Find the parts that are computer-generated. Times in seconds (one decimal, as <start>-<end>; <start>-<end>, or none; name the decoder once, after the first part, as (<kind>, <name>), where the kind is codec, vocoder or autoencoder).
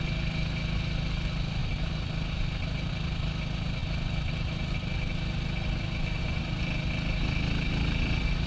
none